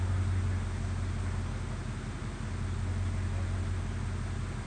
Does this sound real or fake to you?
real